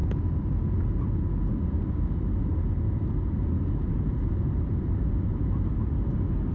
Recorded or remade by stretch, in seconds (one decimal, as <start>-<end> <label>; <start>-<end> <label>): 0.0-3.9 recorded; 3.9-5.7 remade; 5.7-6.5 recorded